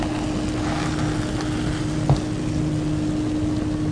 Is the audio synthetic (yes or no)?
no